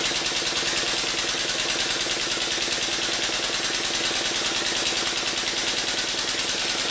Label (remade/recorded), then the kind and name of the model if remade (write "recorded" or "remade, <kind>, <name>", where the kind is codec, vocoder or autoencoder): recorded